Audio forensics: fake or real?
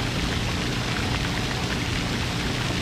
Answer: real